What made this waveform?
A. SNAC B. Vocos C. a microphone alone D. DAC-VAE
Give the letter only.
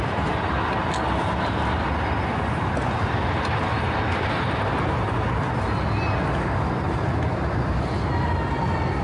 C